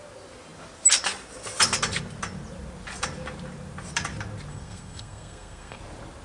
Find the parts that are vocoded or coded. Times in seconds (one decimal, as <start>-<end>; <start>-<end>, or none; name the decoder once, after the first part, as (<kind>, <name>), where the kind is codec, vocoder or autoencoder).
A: 4.5-5.8 (codec, SNAC)